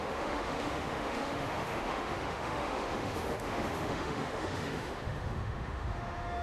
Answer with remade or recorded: remade